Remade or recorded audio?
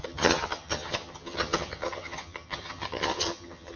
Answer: remade